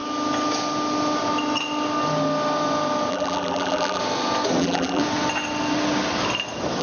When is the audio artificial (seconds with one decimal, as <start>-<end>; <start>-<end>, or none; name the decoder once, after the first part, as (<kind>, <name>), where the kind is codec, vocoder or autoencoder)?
3.1-4.0 (vocoder, BigVGAN v2); 4.6-5.0